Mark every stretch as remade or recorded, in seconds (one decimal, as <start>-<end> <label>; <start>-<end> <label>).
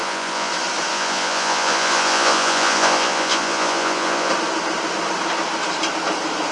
0.0-0.5 remade; 0.5-0.9 recorded; 0.9-4.3 remade; 4.3-6.5 recorded